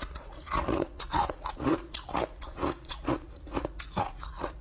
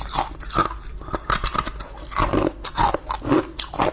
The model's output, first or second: first